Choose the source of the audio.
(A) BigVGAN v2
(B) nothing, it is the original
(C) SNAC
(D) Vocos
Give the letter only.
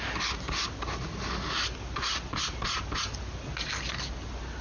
B